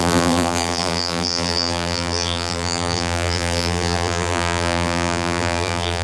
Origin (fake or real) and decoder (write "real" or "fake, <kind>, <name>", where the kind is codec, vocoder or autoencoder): fake, vocoder, BigVGAN v2